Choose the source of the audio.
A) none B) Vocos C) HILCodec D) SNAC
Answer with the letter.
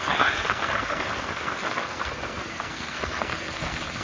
D